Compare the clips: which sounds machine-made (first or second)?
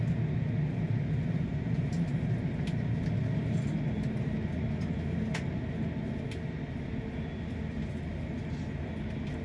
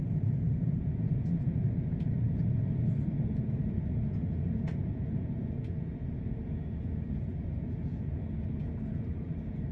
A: second